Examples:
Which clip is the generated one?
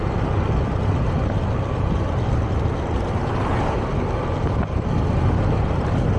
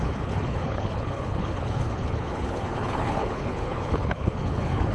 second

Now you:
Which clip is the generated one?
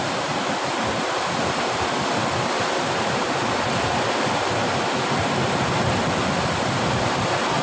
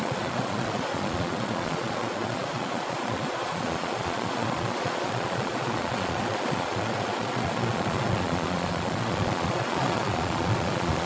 second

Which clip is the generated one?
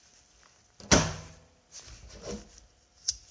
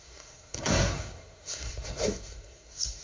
second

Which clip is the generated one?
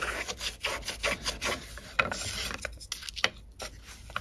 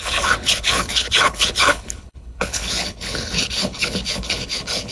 second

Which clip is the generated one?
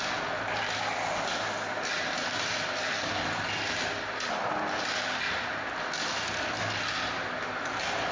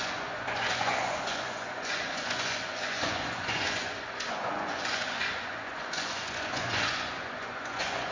second